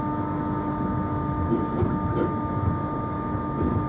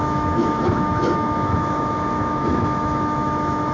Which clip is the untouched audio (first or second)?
first